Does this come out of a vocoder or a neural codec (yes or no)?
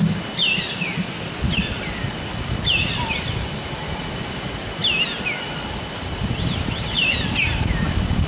no